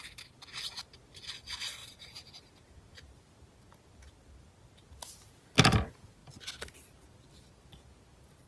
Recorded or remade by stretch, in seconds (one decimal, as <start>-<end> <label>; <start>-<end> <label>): 0.0-8.5 recorded

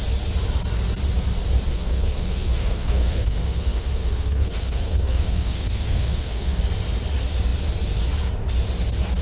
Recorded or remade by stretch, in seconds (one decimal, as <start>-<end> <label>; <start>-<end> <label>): 0.0-1.7 recorded; 1.7-6.6 remade; 6.6-9.2 recorded

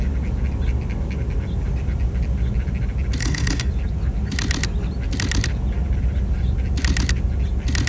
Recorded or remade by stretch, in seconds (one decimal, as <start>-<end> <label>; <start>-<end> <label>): 0.0-3.2 recorded; 3.2-3.7 remade; 3.7-7.9 recorded

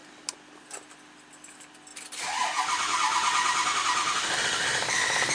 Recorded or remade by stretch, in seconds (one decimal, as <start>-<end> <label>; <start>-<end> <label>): 0.0-5.3 recorded

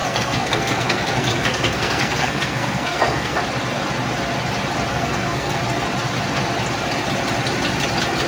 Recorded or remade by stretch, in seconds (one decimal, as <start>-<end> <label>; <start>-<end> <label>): 0.0-3.4 remade; 3.4-4.9 recorded; 4.9-5.6 remade; 5.6-8.3 recorded

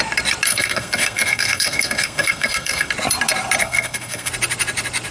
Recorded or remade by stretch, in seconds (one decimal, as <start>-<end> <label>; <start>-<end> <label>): 0.0-0.5 recorded; 0.5-2.9 remade; 2.9-3.6 recorded; 3.6-4.3 remade; 4.3-5.1 recorded

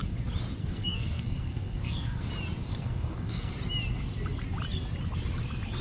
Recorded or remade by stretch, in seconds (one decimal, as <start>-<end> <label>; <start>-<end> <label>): 0.0-0.6 recorded; 0.6-2.3 remade; 2.3-2.7 recorded; 2.7-3.5 remade; 3.5-5.8 recorded